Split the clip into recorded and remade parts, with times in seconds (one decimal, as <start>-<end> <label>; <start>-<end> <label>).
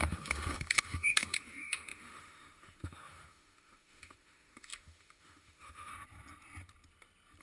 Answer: 0.0-5.9 remade; 5.9-7.4 recorded